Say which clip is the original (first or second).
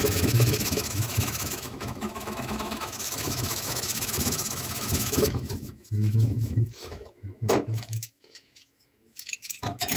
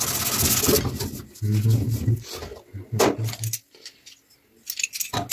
second